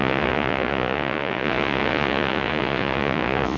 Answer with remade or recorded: remade